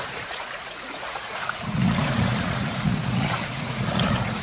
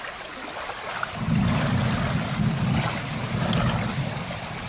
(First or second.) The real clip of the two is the second